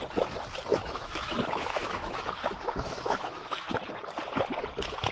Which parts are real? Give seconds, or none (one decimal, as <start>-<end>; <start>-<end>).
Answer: 0.0-0.7; 3.8-5.1